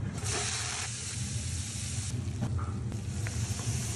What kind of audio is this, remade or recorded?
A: recorded